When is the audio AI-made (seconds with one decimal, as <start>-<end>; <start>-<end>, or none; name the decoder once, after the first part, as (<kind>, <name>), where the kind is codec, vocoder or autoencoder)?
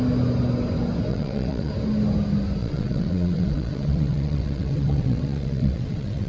1.1-1.7 (vocoder, WaveNeXt); 2.6-6.3